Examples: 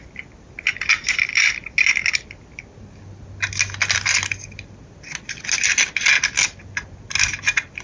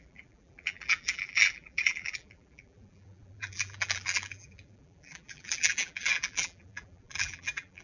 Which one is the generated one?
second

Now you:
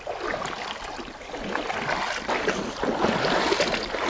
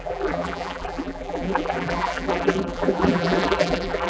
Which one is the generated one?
second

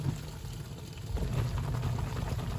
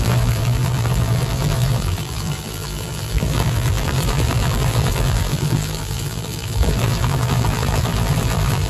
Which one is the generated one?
second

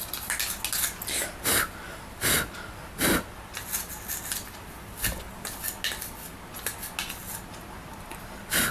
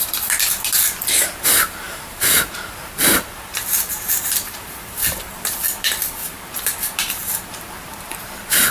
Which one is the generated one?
second